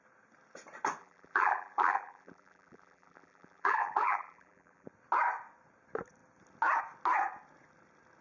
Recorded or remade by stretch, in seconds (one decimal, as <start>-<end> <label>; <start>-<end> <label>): 0.0-1.0 recorded; 1.0-4.9 remade; 4.9-8.2 recorded